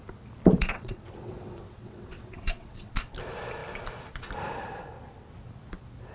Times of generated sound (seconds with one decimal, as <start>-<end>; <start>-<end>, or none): 0.6-2.9